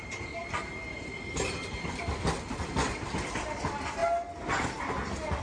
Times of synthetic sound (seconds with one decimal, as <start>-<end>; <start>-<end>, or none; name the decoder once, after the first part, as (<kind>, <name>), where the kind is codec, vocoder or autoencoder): none